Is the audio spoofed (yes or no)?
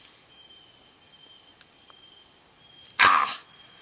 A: no